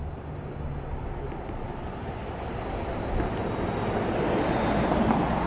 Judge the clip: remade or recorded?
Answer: recorded